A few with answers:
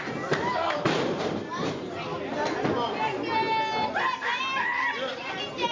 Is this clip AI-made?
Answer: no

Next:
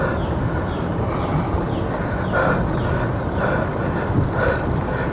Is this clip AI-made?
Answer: no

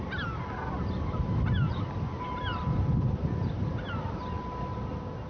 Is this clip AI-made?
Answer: no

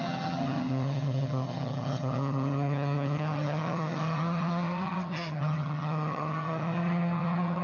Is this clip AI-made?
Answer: yes